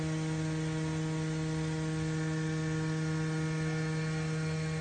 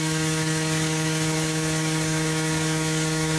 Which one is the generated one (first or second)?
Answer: second